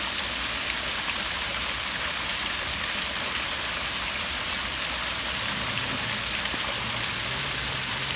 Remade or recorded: recorded